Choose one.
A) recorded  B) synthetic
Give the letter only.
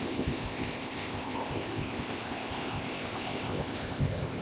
B